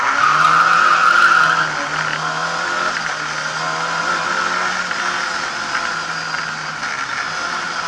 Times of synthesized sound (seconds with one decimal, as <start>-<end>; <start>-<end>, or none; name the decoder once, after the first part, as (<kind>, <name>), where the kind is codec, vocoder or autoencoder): none